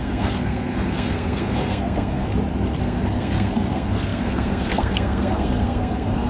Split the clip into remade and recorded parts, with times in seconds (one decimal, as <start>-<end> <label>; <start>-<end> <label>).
0.0-2.3 remade; 2.3-2.8 recorded; 2.8-6.3 remade